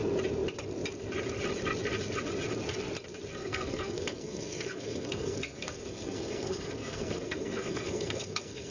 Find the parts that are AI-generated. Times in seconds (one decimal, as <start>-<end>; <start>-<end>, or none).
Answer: 3.4-8.7